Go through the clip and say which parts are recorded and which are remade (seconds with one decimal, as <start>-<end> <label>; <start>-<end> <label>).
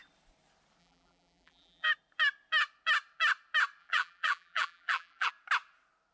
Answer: 0.0-0.8 recorded; 0.8-1.9 remade; 1.9-3.8 recorded; 3.8-5.3 remade; 5.3-6.1 recorded